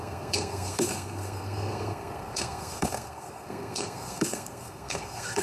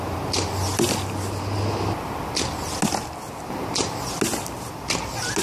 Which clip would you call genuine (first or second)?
second